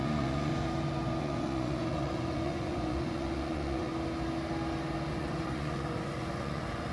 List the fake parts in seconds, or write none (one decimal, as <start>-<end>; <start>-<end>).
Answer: 0.0-0.5; 1.2-3.9; 5.1-6.9

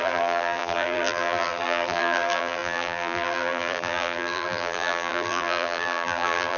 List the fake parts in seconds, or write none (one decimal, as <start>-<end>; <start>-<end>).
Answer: 0.0-6.6

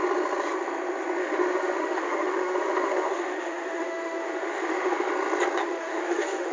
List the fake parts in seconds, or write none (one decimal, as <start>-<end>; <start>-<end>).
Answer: 1.2-5.1; 5.6-6.5

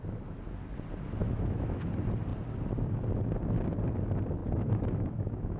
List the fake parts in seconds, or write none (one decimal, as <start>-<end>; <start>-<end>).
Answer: 1.2-1.9; 4.4-5.6

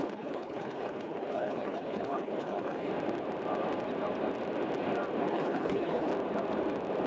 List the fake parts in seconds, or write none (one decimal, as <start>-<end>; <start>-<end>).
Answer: 0.0-2.9; 5.3-6.1

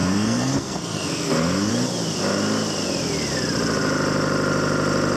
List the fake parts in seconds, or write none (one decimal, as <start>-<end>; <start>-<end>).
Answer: 0.0-1.7

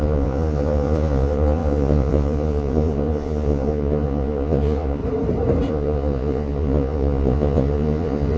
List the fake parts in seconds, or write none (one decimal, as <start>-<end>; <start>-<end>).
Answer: 0.0-5.0; 5.7-8.4

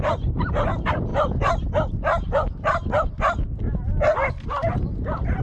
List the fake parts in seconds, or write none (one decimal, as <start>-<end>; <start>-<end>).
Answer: none